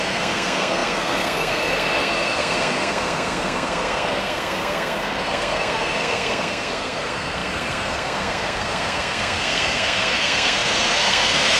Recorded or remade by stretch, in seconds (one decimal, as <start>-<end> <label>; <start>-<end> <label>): 0.0-11.6 remade